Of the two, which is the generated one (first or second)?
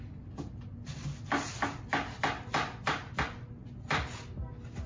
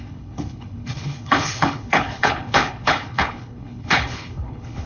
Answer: second